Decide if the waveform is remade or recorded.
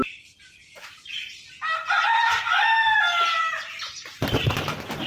recorded